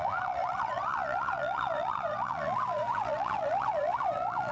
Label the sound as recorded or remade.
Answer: remade